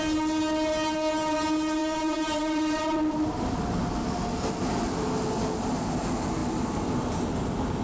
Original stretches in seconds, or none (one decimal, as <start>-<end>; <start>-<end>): 0.0-1.8; 3.9-6.4; 7.1-7.8